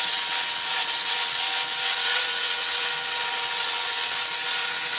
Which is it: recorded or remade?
remade